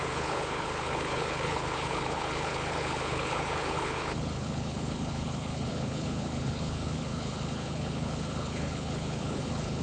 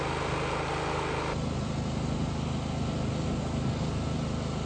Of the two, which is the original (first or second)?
second